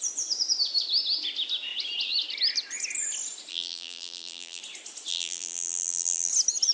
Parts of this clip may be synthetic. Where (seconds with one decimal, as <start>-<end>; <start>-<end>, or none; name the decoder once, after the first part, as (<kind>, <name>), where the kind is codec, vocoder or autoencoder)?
3.5-4.6 (vocoder, BigVGAN v2); 5.1-6.3